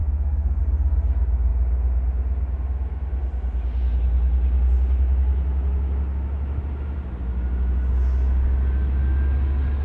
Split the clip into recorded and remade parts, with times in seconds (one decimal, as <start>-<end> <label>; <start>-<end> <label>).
0.0-0.6 remade; 0.6-9.8 recorded